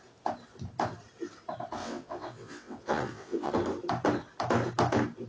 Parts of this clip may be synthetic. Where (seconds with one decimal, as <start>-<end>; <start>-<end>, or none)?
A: 1.8-3.5